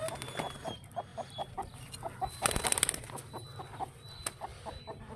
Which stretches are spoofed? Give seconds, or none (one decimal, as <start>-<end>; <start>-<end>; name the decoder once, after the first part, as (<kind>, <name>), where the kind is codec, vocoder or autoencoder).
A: none